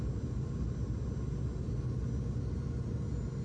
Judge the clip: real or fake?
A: real